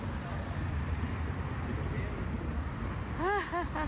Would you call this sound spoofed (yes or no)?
no